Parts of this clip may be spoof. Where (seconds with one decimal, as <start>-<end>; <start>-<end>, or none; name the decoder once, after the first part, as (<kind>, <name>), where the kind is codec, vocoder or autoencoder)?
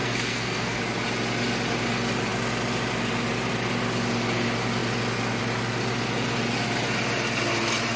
0.0-0.8 (codec, SNAC)